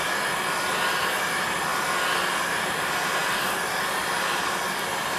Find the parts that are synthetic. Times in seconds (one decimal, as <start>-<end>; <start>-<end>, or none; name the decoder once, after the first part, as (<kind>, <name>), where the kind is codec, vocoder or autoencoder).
none